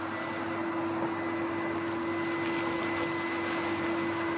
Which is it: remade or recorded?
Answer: recorded